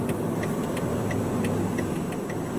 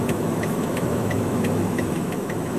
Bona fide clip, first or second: first